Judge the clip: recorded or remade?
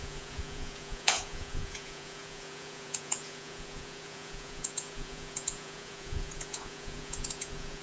remade